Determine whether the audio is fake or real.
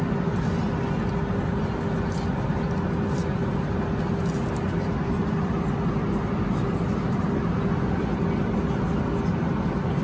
real